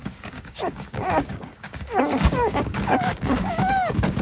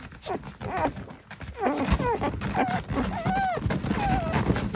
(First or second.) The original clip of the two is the second